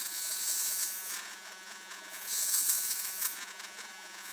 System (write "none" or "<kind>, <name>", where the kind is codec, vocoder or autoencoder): vocoder, Vocos